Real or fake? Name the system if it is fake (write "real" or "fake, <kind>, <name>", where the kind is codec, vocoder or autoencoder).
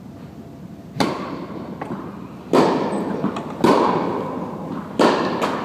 real